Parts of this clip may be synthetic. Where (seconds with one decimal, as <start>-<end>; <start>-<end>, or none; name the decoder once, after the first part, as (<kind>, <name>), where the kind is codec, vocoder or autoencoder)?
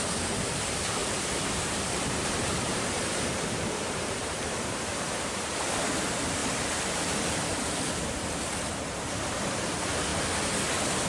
1.0-5.8 (vocoder, BigVGAN v2)